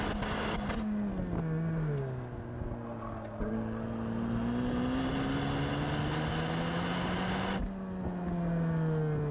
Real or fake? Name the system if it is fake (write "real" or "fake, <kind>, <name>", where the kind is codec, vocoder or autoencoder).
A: real